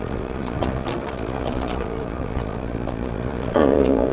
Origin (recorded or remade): remade